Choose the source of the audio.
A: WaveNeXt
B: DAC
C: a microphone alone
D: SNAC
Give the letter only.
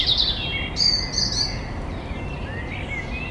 C